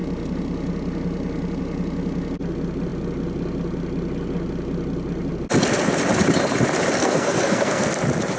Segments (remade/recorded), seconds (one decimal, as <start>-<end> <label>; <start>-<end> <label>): 0.0-7.0 recorded; 7.0-7.9 remade; 7.9-8.4 recorded